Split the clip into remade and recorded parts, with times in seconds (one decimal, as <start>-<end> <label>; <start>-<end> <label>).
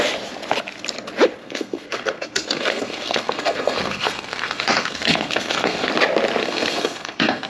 0.0-1.4 recorded; 1.4-5.9 remade; 5.9-6.4 recorded; 6.4-7.5 remade